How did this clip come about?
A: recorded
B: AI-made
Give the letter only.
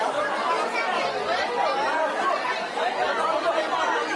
A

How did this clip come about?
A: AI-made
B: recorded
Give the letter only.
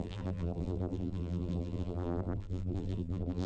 A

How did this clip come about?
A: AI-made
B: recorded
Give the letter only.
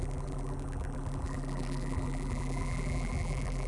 A